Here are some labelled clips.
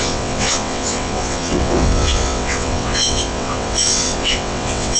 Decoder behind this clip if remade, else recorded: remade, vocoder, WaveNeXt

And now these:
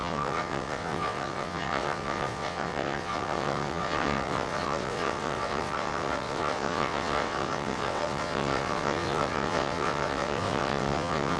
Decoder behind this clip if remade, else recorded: remade, vocoder, WaveNeXt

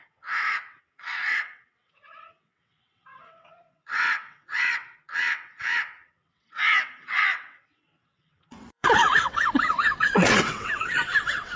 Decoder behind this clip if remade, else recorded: remade, vocoder, WaveNeXt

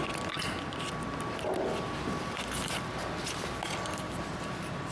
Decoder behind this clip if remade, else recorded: recorded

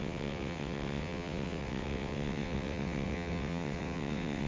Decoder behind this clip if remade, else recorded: remade, vocoder, WaveNeXt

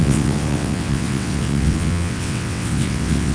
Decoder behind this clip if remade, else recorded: remade, vocoder, WaveNeXt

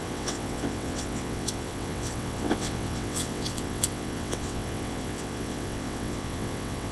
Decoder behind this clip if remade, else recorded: remade, vocoder, WaveNeXt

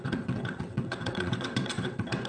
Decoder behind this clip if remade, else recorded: remade, vocoder, WaveNeXt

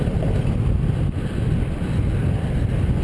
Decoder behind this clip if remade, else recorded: recorded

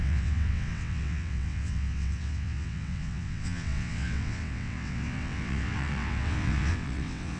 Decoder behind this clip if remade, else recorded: remade, vocoder, WaveNeXt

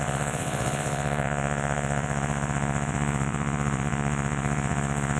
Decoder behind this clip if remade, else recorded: remade, vocoder, WaveNeXt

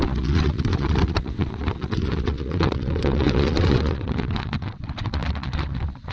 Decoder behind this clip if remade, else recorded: remade, vocoder, WaveNeXt